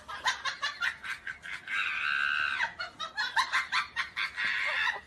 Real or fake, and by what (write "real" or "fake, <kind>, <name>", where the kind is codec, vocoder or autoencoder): real